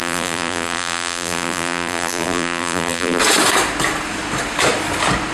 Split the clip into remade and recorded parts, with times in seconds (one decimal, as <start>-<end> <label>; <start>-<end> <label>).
0.0-3.2 remade; 3.2-5.3 recorded